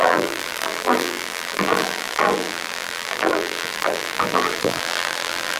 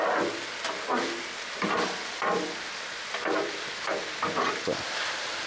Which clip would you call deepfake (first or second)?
first